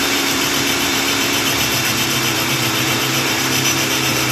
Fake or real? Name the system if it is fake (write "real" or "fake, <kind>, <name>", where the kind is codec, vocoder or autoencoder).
fake, vocoder, BigVGAN v2